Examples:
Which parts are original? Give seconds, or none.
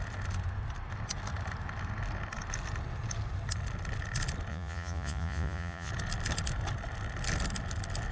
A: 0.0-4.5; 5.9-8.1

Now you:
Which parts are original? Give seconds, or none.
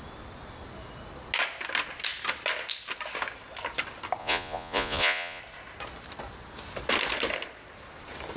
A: 0.0-4.2; 5.4-8.4